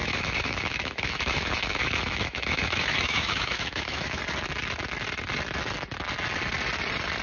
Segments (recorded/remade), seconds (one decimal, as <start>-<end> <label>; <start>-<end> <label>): 0.0-4.2 remade; 4.2-7.2 recorded